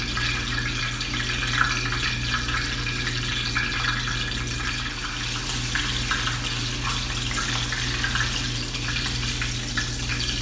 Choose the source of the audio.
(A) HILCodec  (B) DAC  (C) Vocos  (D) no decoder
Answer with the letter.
D